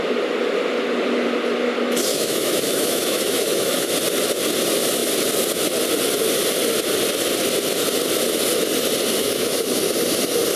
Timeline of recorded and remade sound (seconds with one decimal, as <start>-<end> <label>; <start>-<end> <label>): 0.0-2.1 recorded; 2.1-3.9 remade; 3.9-9.2 recorded; 9.2-9.8 remade; 9.8-10.6 recorded